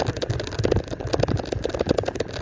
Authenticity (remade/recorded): recorded